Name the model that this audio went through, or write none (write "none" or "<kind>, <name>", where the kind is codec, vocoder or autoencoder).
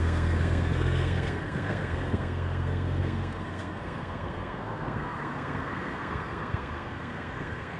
codec, SNAC